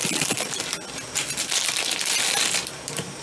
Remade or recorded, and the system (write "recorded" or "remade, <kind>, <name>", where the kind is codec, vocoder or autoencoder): recorded